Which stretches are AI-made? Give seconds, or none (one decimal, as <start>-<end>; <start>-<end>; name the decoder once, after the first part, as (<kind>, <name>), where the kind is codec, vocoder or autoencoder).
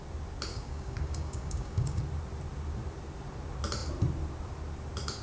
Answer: 0.5-2.0 (codec, DAC)